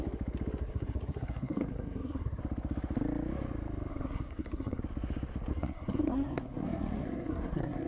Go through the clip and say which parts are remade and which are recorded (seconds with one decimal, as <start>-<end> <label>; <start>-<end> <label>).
0.0-0.6 recorded; 0.6-2.4 remade; 2.4-3.9 recorded; 3.9-4.8 remade; 4.8-5.5 recorded; 5.5-7.9 remade